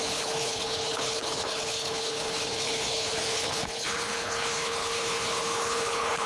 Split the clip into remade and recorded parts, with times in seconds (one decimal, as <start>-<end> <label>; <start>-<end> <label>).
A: 0.0-6.3 remade